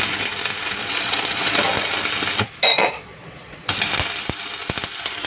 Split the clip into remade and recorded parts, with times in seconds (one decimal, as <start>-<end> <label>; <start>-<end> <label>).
0.0-0.8 recorded; 0.8-1.6 remade; 1.6-2.7 recorded; 2.7-3.7 remade; 3.7-5.3 recorded